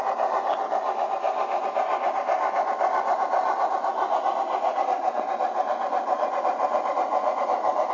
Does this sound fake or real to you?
real